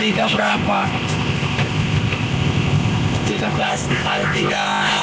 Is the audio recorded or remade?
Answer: remade